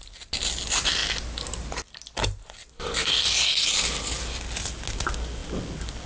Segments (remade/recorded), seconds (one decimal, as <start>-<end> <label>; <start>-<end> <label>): 0.0-6.1 recorded